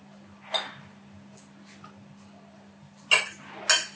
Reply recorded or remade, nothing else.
recorded